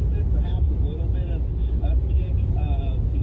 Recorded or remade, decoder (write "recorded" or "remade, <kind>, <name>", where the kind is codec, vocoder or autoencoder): recorded